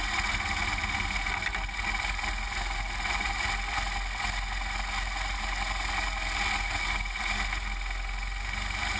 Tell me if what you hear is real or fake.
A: real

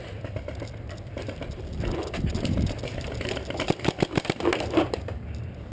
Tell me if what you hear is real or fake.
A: fake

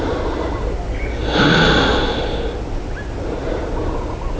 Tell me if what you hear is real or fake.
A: real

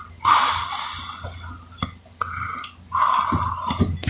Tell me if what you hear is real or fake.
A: real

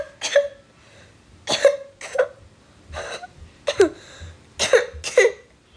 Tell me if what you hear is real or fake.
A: real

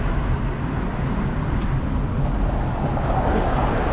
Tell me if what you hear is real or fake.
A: real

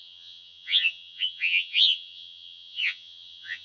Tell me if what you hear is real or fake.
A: fake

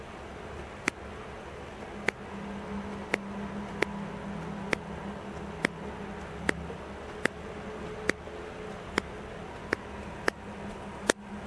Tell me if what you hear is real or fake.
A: real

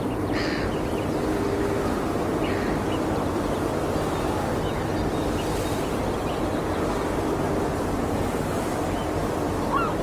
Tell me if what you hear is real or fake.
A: real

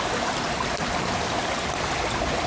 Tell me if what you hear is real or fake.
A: real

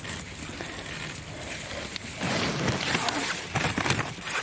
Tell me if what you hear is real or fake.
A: real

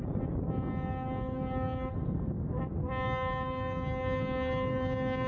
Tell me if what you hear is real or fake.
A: real